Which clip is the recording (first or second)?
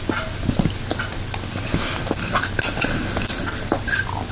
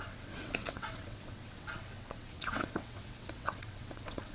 first